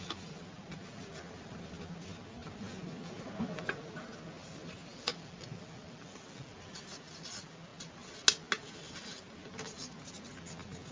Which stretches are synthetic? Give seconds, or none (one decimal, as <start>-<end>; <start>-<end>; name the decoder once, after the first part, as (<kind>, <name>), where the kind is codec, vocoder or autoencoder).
4.9-6.8 (vocoder, BigVGAN v2)